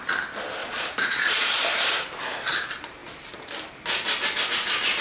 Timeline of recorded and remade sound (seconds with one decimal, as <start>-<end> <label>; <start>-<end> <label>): 0.0-0.6 recorded; 0.6-1.6 remade; 1.6-5.0 recorded